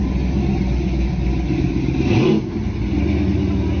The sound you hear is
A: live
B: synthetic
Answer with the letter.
A